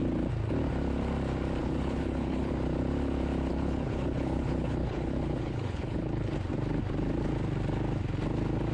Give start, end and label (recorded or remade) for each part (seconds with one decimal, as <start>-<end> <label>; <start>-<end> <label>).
0.0-1.6 recorded; 1.6-2.5 remade; 2.5-3.5 recorded; 3.5-6.3 remade; 6.3-8.7 recorded